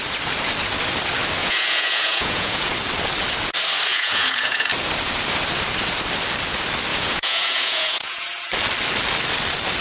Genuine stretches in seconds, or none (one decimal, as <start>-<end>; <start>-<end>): 0.0-1.4; 2.7-3.9; 4.7-6.9; 8.4-9.8